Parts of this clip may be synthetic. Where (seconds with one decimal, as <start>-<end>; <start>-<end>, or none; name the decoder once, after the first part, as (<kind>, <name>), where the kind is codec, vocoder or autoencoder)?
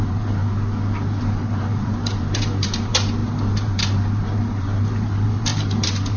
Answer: 0.0-0.4 (vocoder, BigVGAN v2); 1.2-6.2